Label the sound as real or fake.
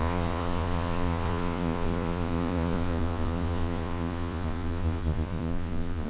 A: fake